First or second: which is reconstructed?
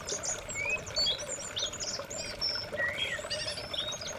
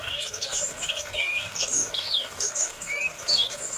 second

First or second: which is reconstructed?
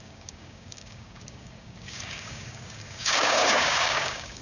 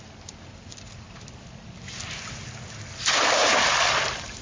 first